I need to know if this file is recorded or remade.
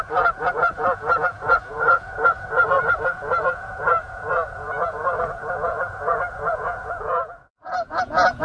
remade